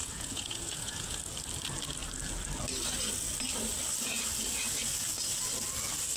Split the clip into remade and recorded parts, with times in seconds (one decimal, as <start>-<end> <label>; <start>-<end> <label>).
0.0-1.2 remade; 1.2-6.2 recorded